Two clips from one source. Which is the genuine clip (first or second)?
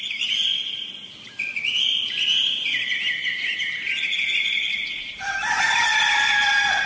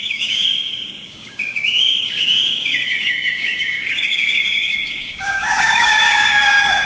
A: first